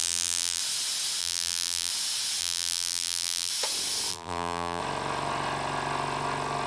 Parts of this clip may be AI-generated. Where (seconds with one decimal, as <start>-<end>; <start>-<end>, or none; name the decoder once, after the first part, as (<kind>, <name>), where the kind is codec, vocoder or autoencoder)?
0.0-0.6 (vocoder, BigVGAN v2); 1.2-1.9; 2.4-3.5; 4.1-4.8